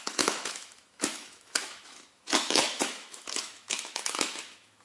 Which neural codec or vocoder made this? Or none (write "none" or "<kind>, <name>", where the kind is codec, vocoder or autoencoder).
autoencoder, DAC-VAE